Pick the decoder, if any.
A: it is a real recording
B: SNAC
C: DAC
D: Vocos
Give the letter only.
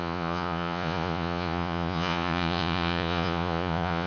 D